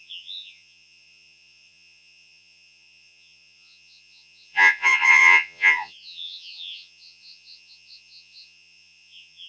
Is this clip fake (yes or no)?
yes